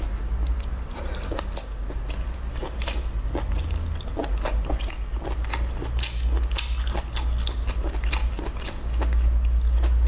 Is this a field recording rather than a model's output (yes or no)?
yes